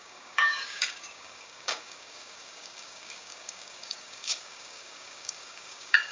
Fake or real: fake